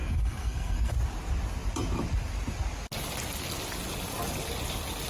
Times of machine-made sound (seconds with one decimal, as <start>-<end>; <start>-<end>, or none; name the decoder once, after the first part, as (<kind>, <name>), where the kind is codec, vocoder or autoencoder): 0.0-0.9 (codec, SNAC)